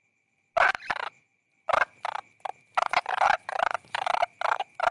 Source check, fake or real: real